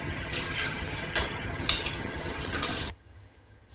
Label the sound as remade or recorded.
remade